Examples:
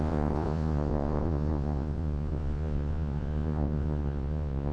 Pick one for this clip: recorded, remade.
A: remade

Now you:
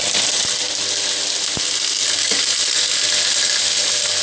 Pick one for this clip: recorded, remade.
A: recorded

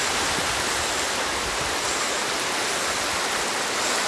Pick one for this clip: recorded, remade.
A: recorded